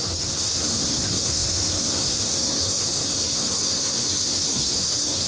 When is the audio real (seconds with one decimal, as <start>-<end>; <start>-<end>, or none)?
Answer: none